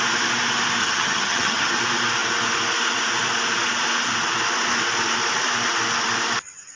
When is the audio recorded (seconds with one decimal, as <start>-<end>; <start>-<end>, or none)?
0.0-0.8; 1.8-6.8